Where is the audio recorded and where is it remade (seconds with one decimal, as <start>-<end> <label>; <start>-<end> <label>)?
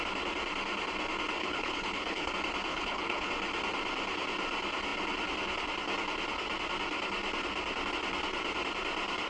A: 0.0-1.4 recorded; 1.4-2.3 remade; 2.3-2.7 recorded; 2.7-3.3 remade; 3.3-9.3 recorded